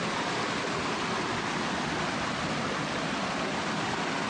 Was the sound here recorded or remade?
recorded